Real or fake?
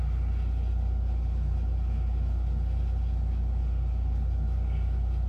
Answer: real